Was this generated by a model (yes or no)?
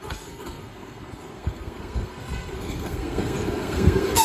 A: yes